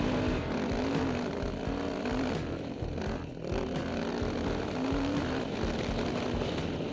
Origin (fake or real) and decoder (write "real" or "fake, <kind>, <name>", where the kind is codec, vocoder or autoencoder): real